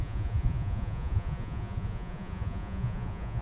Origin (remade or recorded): remade